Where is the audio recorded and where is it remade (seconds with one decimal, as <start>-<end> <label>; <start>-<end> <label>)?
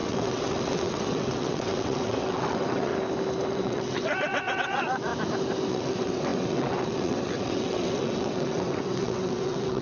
0.0-2.9 remade; 2.9-3.5 recorded; 3.5-5.1 remade; 5.1-5.7 recorded; 5.7-9.8 remade